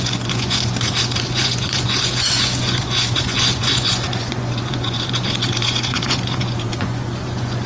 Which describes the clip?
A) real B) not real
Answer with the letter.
B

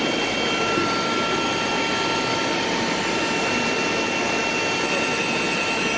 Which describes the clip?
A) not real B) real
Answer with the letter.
B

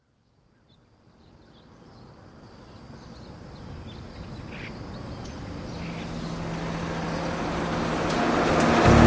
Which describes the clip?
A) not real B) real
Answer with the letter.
B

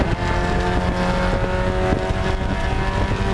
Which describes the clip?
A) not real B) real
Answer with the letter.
B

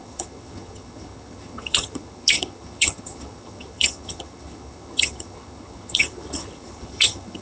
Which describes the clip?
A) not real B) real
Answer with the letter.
A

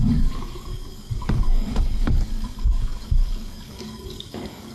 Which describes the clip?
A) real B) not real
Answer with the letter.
B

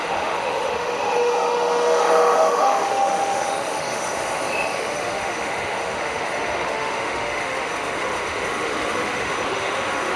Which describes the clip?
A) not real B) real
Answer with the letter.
A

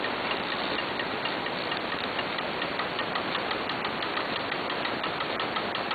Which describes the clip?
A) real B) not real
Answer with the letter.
A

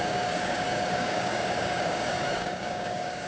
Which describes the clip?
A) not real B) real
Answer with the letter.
A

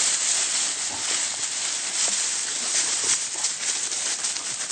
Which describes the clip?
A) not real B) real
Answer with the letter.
B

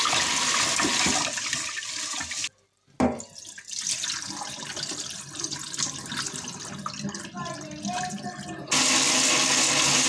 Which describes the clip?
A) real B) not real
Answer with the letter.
A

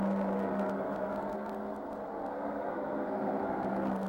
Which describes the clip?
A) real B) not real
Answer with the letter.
B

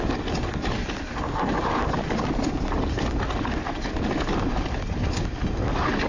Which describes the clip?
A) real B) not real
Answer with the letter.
A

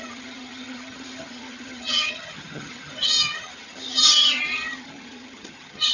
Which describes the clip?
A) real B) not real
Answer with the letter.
B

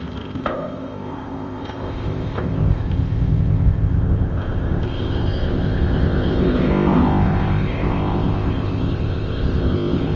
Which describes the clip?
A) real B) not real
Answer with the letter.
B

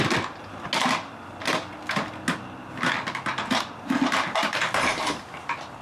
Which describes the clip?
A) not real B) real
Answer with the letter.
B